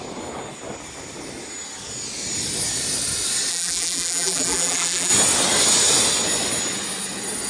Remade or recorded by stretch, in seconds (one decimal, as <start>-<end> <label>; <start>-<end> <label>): 0.0-3.5 recorded; 3.5-5.1 remade; 5.1-7.5 recorded